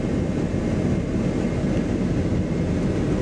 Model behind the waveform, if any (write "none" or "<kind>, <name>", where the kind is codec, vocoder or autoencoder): none